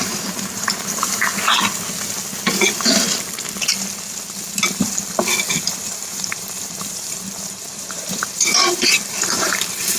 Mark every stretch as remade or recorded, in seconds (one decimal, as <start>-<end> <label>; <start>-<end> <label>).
0.0-1.3 remade; 1.3-5.6 recorded; 5.6-10.0 remade